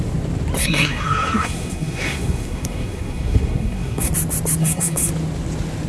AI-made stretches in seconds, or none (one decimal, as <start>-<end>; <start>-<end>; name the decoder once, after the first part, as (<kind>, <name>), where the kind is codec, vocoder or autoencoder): 0.6-4.1 (codec, SNAC); 4.6-5.1